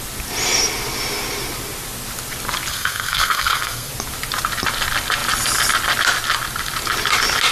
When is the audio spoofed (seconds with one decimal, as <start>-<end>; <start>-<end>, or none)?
2.7-3.9